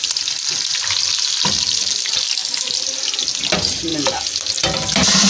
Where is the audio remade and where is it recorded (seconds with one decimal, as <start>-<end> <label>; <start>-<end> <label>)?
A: 0.0-5.3 recorded